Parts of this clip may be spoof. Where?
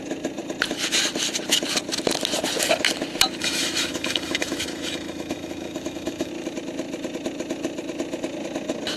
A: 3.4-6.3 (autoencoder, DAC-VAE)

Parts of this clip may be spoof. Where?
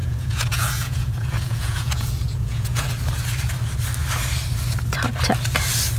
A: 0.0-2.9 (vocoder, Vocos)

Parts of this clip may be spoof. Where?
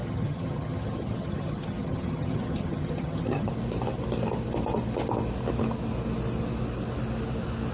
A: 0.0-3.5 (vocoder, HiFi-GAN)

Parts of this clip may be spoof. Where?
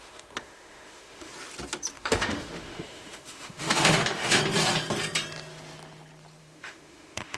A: 0.0-1.3 (autoencoder, DAC-VAE); 1.9-4.4; 6.4-7.4